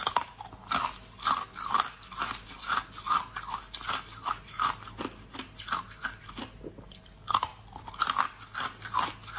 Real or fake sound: real